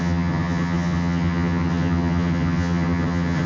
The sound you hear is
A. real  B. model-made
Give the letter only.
B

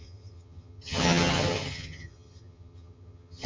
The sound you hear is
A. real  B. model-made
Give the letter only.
B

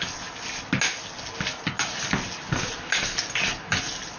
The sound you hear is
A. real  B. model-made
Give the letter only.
A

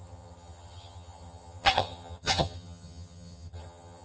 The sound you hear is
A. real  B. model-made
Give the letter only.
B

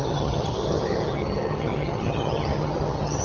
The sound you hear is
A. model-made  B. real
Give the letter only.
A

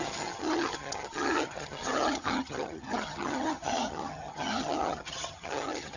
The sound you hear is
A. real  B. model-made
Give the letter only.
B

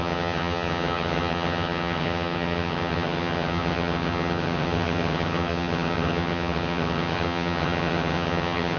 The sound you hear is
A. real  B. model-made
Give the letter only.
B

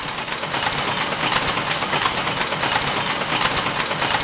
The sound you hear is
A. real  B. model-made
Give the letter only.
A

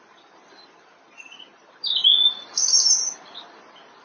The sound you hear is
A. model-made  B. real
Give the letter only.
B